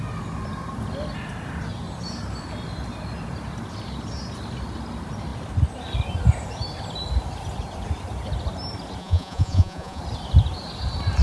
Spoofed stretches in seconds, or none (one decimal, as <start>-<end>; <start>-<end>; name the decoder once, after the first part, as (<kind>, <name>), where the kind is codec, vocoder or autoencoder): 9.0-10.0 (vocoder, Vocos)